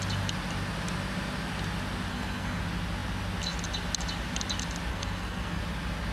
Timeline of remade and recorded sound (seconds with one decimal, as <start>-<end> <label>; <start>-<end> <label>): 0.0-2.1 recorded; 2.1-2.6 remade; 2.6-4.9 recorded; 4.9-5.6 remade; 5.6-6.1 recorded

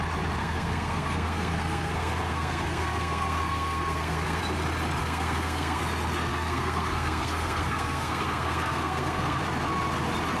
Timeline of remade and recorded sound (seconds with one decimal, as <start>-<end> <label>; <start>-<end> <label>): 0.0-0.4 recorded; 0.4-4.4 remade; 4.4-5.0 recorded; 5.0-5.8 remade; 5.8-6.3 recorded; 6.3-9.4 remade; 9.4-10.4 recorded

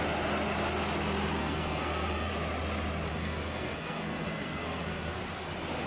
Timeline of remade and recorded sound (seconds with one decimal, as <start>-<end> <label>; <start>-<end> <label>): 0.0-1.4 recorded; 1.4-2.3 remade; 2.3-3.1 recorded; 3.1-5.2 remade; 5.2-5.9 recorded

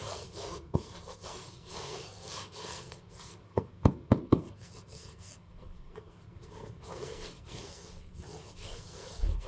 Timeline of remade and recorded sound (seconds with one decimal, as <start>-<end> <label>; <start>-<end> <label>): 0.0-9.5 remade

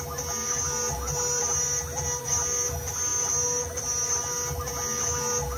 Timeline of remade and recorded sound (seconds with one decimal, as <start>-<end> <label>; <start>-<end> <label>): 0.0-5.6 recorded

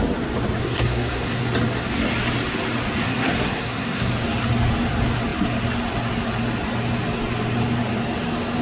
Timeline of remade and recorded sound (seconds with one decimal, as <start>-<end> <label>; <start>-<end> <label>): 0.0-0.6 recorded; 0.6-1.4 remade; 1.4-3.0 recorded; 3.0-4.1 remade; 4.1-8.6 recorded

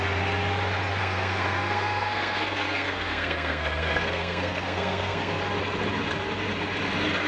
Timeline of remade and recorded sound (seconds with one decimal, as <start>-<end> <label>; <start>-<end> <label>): 0.0-1.0 recorded; 1.0-5.4 remade; 5.4-7.3 recorded

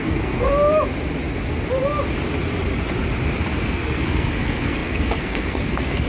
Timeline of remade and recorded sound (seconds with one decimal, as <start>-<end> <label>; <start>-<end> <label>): 0.0-0.5 remade; 0.5-3.6 recorded; 3.6-6.1 remade